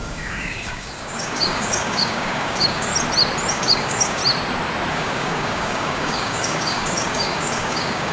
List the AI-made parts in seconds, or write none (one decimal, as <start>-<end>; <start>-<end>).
0.0-2.9; 3.5-4.2; 4.9-8.1